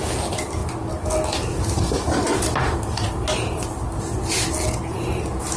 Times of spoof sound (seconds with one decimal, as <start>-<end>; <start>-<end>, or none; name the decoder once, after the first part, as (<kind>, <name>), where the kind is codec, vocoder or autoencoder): none